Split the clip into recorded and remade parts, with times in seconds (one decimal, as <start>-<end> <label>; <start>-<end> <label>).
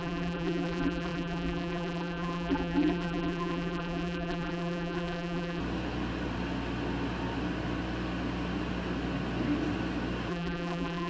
0.0-5.6 remade; 5.6-10.3 recorded; 10.3-11.1 remade